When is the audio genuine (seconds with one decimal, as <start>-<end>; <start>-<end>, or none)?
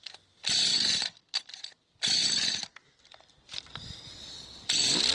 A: 0.0-0.7; 3.8-5.1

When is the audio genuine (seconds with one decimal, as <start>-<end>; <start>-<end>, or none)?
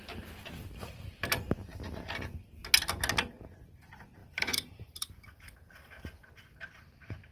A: 0.0-4.2; 5.4-7.3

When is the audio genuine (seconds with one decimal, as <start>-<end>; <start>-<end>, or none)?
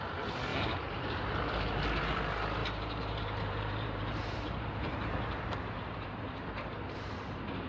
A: 0.0-2.6; 7.0-7.7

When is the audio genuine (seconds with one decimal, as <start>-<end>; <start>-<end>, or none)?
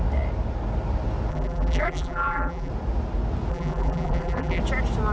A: 0.0-1.3; 2.7-3.5; 4.6-5.1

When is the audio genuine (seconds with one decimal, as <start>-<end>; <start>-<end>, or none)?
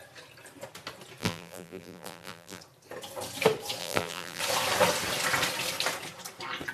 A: 0.0-1.2; 2.6-3.8; 4.4-6.7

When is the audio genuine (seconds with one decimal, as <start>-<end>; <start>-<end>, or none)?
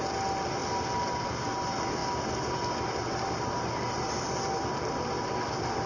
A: 0.0-5.9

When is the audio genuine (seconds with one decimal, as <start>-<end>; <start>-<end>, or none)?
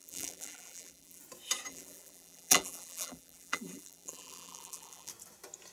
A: 1.2-1.7; 5.1-5.7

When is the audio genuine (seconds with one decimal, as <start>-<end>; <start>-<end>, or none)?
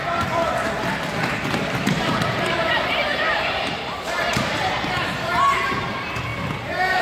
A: 0.0-1.2; 5.4-7.0